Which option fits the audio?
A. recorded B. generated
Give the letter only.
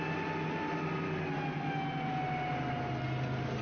A